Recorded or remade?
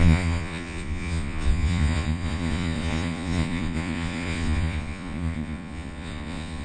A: remade